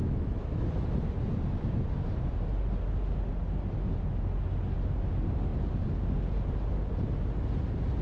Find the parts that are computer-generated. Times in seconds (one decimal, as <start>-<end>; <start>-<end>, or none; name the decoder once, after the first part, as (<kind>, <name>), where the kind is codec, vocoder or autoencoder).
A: 0.0-0.7 (autoencoder, DAC-VAE)